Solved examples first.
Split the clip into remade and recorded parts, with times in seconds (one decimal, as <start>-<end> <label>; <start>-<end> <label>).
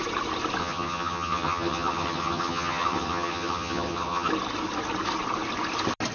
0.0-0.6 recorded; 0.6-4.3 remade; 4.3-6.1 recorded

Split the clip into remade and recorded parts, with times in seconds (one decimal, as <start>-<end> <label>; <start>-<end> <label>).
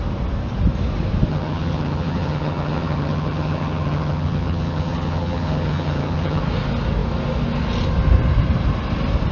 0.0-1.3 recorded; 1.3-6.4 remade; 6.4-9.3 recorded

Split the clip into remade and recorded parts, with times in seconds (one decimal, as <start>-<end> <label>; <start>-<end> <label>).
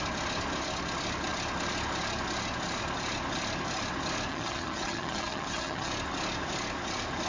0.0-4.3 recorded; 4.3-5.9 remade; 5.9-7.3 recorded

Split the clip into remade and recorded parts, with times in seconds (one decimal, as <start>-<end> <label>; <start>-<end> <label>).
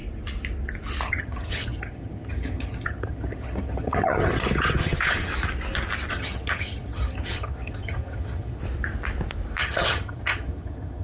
0.0-1.1 recorded; 1.1-5.3 remade; 5.3-6.1 recorded; 6.1-8.6 remade; 8.6-9.6 recorded; 9.6-11.0 remade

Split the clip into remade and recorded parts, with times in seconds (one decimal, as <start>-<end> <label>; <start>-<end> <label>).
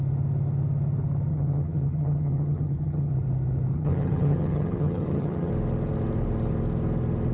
0.0-1.3 recorded; 1.3-3.1 remade; 3.1-3.7 recorded; 3.7-5.5 remade; 5.5-7.3 recorded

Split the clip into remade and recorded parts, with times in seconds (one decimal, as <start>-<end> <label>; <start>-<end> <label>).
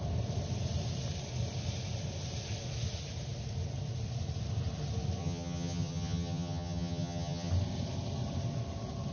0.0-5.2 recorded; 5.2-7.5 remade; 7.5-9.1 recorded